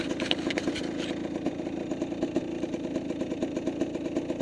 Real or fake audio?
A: real